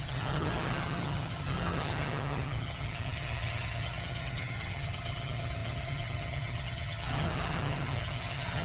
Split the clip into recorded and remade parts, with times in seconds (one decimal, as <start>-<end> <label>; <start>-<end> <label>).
0.0-8.6 remade